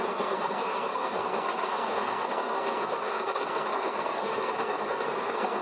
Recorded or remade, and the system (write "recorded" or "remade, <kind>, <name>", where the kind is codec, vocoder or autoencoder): remade, codec, SNAC